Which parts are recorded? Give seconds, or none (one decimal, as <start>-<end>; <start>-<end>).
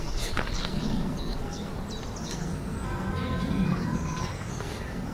1.7-2.2